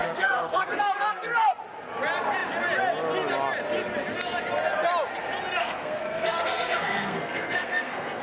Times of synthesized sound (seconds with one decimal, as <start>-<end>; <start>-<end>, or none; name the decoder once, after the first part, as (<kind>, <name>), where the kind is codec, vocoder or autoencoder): 0.0-1.6 (codec, SNAC); 5.6-8.2